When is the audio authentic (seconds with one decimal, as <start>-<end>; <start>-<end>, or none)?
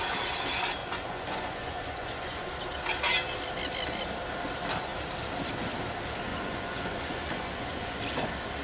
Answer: 0.0-0.8; 2.5-6.3; 8.0-8.6